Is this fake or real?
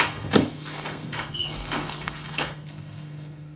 fake